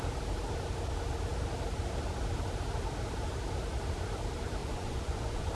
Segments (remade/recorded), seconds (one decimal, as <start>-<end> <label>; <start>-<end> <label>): 0.0-4.6 recorded; 4.6-5.5 remade